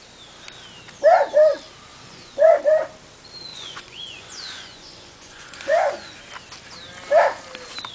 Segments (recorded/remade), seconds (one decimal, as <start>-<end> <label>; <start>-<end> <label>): 0.0-1.9 recorded; 1.9-2.6 remade; 2.6-3.5 recorded; 3.5-6.2 remade; 6.2-7.9 recorded